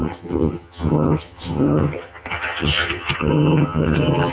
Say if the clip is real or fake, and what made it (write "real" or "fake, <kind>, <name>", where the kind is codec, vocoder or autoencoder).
fake, vocoder, HiFi-GAN